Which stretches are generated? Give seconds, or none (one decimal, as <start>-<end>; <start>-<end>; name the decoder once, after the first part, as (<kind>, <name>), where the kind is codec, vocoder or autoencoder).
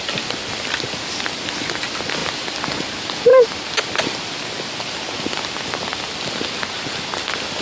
none